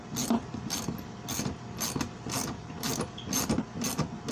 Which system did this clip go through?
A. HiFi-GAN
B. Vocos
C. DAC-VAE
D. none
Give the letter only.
D